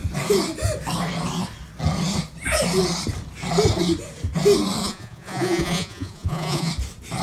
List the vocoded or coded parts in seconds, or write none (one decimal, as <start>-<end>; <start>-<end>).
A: 4.8-6.7